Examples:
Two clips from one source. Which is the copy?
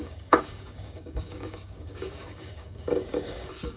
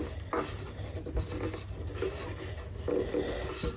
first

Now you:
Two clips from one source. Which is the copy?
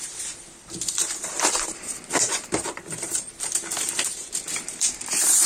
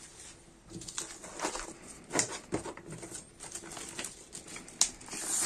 first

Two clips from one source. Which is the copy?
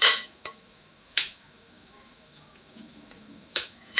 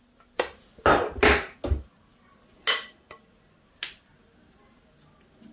first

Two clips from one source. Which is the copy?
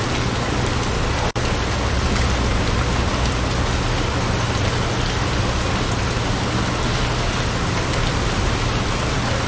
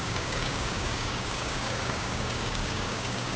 second